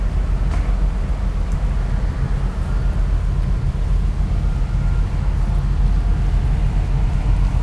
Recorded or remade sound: recorded